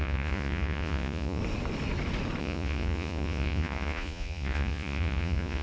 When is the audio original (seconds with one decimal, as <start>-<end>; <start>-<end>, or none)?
1.4-2.4